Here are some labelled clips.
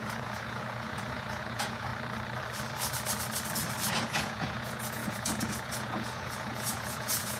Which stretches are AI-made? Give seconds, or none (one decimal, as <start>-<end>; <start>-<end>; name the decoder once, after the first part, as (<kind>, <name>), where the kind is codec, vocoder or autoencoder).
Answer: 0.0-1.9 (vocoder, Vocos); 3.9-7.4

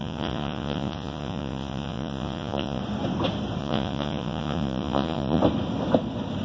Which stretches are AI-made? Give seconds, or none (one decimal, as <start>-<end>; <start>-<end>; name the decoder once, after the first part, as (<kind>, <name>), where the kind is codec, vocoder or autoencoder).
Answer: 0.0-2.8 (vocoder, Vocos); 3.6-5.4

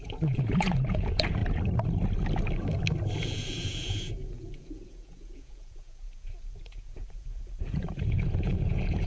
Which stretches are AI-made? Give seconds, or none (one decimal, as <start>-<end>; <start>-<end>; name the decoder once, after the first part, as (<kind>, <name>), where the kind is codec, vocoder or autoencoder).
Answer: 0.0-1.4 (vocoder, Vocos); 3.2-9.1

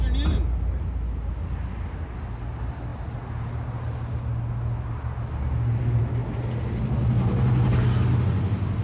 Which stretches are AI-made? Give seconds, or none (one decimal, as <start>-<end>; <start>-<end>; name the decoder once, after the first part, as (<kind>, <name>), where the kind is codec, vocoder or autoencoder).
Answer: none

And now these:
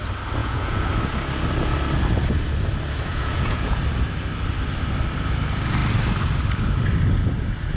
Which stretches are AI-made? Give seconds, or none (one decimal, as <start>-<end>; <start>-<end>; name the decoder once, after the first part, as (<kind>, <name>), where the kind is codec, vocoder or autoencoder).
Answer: 0.4-0.9 (vocoder, Vocos); 3.1-3.8